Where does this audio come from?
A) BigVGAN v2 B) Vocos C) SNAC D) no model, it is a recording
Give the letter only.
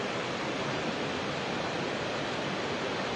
D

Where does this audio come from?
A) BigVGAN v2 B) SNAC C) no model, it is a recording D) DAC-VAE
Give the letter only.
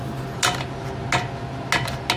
C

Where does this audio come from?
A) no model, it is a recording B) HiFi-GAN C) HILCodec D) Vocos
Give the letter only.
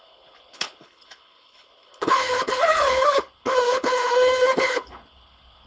C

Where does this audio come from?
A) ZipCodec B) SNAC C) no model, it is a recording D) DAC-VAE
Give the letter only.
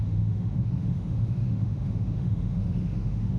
D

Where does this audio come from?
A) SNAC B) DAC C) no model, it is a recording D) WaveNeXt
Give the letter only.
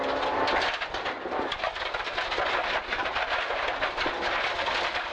C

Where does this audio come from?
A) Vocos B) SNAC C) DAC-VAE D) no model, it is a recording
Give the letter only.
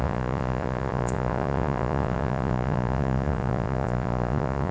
A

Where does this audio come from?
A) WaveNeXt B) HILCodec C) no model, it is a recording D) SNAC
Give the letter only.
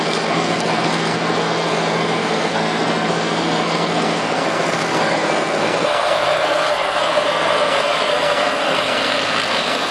D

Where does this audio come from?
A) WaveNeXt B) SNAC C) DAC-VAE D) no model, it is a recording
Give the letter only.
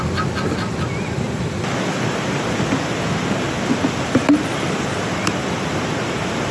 D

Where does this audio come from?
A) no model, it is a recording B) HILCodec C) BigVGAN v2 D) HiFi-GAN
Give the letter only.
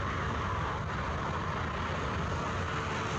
A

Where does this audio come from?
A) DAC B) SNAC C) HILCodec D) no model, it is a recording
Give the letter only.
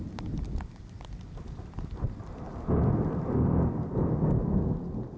D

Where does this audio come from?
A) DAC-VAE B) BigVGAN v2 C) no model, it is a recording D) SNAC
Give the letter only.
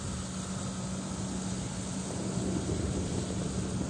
C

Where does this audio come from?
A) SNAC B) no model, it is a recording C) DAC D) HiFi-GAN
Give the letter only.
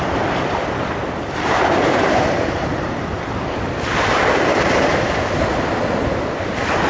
B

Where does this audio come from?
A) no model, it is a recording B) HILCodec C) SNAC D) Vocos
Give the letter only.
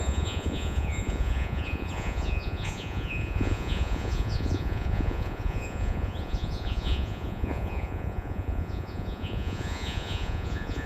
D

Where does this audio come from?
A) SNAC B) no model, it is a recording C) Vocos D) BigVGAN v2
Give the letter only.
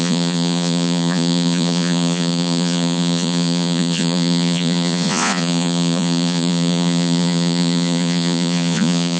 C